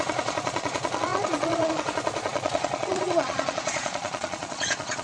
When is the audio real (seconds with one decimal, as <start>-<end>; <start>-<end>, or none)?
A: none